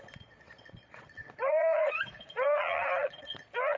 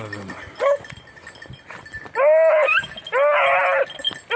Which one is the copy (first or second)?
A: first